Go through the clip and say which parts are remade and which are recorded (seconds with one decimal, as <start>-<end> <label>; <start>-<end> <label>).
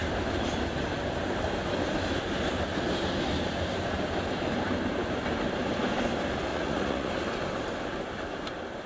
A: 0.0-6.5 recorded; 6.5-7.1 remade; 7.1-8.9 recorded